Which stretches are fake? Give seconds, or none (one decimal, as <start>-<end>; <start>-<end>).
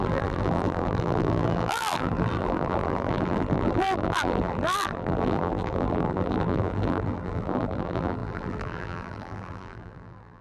0.0-10.4